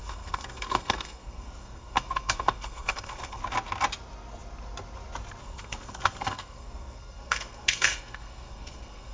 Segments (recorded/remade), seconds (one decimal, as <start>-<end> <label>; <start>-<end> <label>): 0.0-3.4 remade; 3.4-5.4 recorded; 5.4-9.1 remade